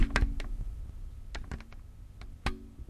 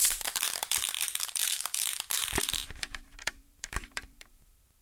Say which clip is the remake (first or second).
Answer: second